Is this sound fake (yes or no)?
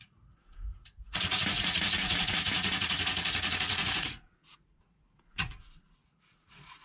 yes